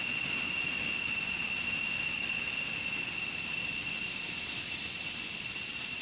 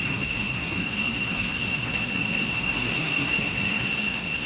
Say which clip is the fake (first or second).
second